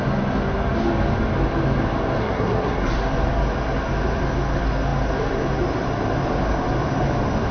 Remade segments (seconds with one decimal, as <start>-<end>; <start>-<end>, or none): 2.2-2.9